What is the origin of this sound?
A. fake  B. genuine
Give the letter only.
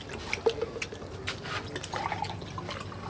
B